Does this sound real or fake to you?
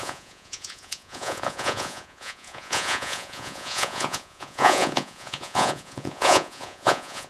fake